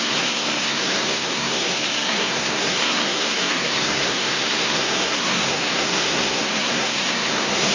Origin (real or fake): fake